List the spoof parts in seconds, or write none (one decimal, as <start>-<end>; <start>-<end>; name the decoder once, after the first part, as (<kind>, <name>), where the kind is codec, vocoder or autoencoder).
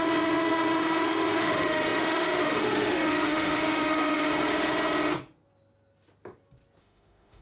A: 0.0-4.3 (autoencoder, DAC-VAE); 6.8-7.4